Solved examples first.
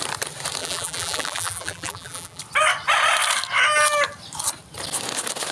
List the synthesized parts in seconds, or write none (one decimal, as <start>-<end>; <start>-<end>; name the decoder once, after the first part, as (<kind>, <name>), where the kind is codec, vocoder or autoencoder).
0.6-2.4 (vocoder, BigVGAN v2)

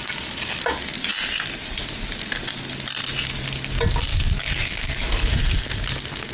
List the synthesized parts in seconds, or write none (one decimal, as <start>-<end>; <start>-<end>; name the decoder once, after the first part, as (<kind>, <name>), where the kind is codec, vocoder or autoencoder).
4.1-5.1 (codec, DAC)

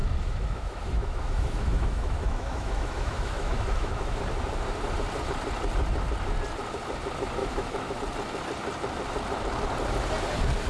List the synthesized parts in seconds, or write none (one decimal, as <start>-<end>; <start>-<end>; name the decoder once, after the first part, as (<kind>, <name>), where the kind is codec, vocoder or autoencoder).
0.0-4.2 (autoencoder, DAC-VAE); 7.4-8.0

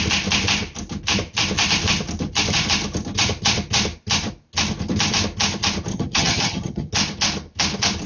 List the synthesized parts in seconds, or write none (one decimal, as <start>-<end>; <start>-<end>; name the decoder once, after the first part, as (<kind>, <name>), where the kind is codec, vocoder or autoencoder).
5.9-6.9 (vocoder, HiFi-GAN)

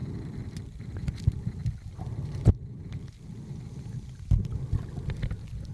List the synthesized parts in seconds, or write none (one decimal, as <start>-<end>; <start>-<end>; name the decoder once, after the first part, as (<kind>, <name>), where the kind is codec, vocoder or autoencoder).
none

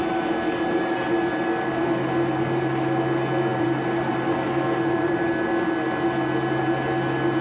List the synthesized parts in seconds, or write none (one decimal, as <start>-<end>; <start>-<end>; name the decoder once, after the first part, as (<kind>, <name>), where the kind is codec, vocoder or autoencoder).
3.5-5.2 (vocoder, BigVGAN v2)

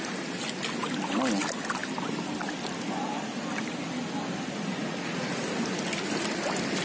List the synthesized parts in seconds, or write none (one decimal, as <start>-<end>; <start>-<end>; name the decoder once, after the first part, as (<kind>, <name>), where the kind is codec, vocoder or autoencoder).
4.9-5.4 (vocoder, Vocos)

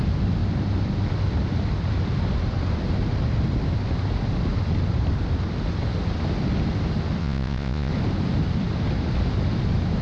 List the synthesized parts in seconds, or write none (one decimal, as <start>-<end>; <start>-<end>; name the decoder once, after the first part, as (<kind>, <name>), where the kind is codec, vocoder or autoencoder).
7.2-7.9 (vocoder, Vocos)